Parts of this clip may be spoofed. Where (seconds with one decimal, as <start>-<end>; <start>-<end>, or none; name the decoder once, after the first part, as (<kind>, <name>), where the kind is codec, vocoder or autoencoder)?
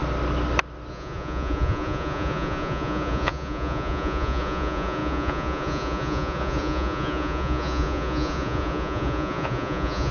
0.9-10.1 (vocoder, Vocos)